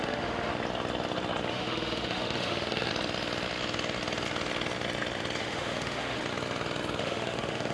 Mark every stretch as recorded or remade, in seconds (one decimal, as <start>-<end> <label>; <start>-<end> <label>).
0.0-0.5 remade; 0.5-1.5 recorded; 1.5-2.9 remade; 2.9-5.4 recorded; 5.4-6.2 remade; 6.2-7.0 recorded; 7.0-7.7 remade